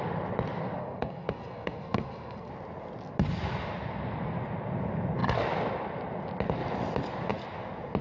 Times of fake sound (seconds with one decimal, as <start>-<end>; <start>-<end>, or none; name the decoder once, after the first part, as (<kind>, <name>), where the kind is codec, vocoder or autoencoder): 0.8-2.5 (codec, SNAC)